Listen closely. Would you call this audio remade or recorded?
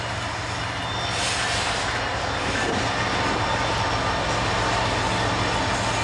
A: recorded